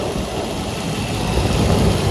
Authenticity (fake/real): fake